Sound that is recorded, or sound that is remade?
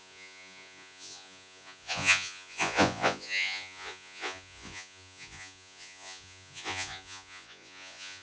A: remade